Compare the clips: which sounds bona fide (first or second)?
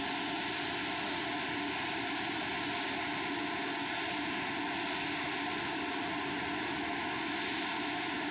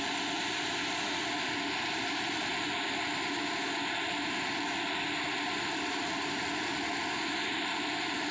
first